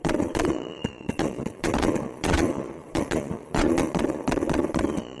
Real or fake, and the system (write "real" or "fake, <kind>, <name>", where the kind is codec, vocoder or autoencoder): fake, vocoder, Vocos